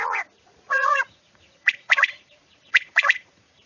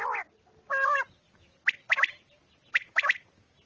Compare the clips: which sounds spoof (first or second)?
first